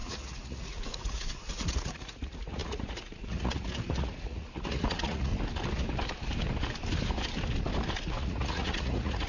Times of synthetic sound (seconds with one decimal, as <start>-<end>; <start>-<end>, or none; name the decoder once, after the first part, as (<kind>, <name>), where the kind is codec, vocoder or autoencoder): 0.0-5.3 (vocoder, Vocos); 8.0-9.3